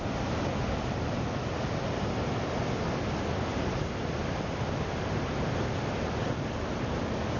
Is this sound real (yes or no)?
yes